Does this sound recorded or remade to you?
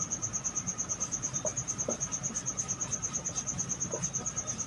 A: recorded